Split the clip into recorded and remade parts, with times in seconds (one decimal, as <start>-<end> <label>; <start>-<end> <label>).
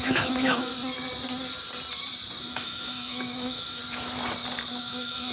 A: 0.0-0.7 remade; 0.7-2.4 recorded; 2.4-3.8 remade; 3.8-4.8 recorded; 4.8-5.3 remade